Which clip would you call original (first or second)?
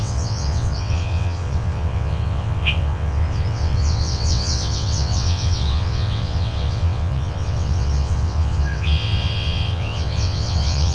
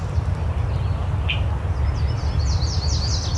second